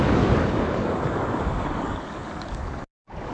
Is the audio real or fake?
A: fake